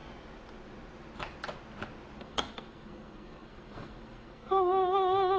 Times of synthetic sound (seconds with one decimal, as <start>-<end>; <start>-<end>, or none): 2.2-5.4